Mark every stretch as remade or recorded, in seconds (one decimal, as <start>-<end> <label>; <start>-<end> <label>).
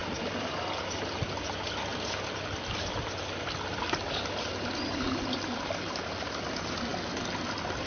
0.0-7.9 recorded